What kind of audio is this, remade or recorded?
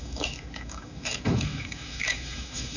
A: remade